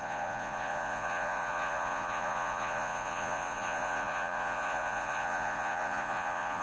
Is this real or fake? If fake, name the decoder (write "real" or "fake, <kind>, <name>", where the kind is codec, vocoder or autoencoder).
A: fake, vocoder, Vocos